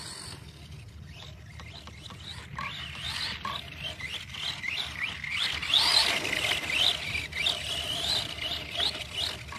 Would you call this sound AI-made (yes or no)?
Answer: no